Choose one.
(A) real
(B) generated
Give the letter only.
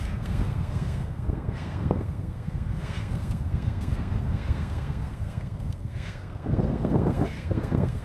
B